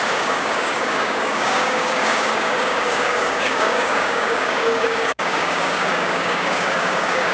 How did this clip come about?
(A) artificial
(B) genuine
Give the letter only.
A